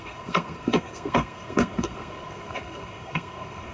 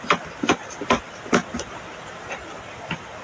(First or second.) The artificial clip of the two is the first